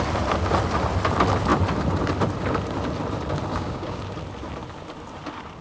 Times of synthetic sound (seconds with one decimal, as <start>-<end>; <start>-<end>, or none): 3.5-4.0